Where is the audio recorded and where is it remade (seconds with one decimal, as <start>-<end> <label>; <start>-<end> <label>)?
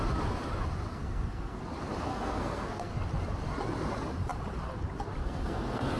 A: 0.0-0.9 recorded; 0.9-1.6 remade; 1.6-2.1 recorded; 2.1-2.9 remade; 2.9-5.2 recorded; 5.2-6.0 remade